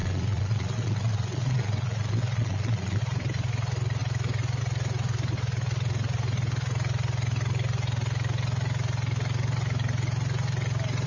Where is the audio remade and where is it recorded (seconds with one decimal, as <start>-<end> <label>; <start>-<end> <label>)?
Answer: 0.0-3.0 remade; 3.0-11.1 recorded